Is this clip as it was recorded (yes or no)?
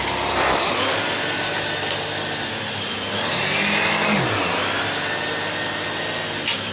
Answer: yes